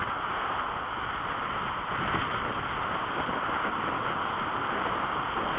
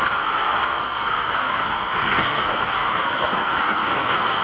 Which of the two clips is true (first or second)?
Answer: first